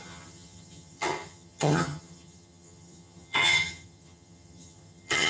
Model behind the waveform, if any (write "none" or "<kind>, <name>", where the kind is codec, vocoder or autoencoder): vocoder, HiFi-GAN